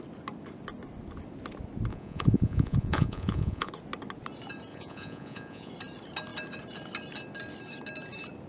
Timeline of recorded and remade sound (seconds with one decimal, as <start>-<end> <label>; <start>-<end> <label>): 0.0-1.9 recorded; 1.9-3.7 remade; 3.7-4.7 recorded; 4.7-5.7 remade; 5.7-8.5 recorded